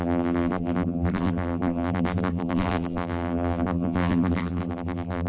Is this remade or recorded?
remade